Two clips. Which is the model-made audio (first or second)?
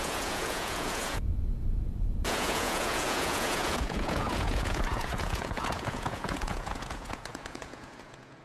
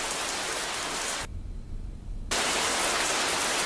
first